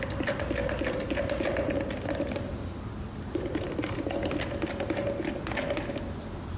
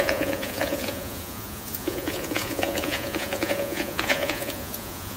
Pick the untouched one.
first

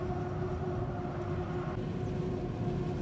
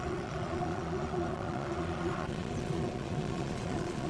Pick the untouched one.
first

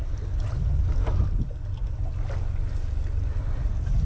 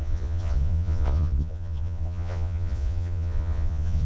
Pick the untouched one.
first